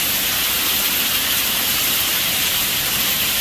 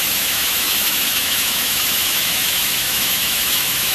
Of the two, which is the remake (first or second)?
second